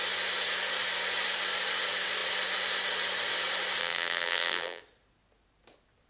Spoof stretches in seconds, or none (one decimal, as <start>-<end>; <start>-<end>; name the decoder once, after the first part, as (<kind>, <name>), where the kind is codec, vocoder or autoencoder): 3.8-4.8 (vocoder, BigVGAN v2)